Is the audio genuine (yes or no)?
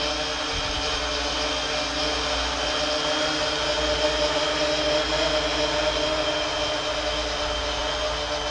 yes